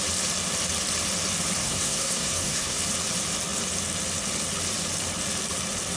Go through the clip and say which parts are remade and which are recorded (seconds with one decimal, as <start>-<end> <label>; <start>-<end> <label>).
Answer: 0.0-1.6 recorded; 1.6-2.8 remade; 2.8-6.0 recorded